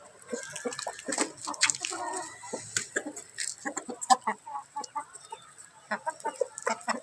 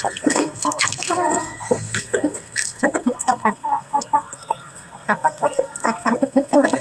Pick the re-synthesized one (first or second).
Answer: second